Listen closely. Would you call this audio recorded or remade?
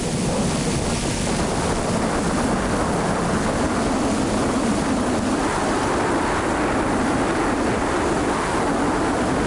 recorded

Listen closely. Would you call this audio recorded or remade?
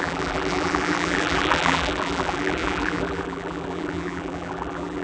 remade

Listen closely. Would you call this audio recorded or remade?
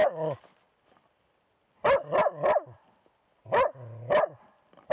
recorded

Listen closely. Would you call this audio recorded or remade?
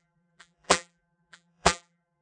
remade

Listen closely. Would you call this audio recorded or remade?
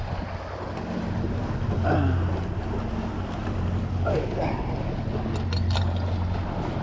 recorded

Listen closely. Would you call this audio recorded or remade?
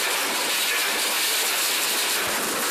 remade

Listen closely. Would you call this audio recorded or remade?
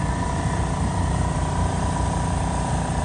remade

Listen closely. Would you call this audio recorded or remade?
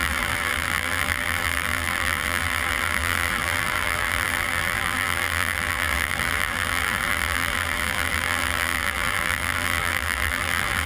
remade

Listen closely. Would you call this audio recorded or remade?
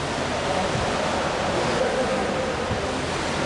recorded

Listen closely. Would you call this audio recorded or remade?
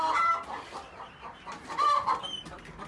remade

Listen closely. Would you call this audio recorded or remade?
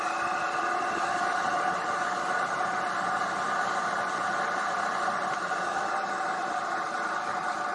remade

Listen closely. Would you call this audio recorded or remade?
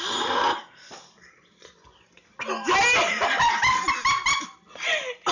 recorded